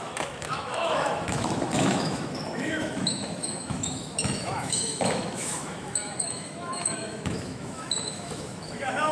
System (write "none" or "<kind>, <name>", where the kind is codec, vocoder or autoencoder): autoencoder, DAC-VAE